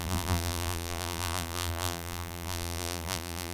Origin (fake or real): fake